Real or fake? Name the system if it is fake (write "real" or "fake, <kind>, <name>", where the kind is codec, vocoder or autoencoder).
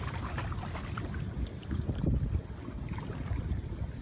real